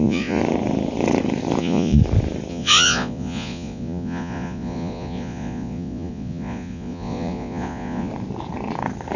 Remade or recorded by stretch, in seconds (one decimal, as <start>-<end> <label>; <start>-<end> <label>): 0.0-0.4 remade; 0.4-1.6 recorded; 1.6-2.0 remade; 2.0-2.5 recorded; 2.5-8.1 remade; 8.1-9.2 recorded